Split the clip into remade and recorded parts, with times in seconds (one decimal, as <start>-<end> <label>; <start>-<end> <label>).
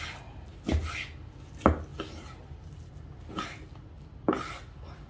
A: 0.0-1.9 recorded; 1.9-2.9 remade; 2.9-5.1 recorded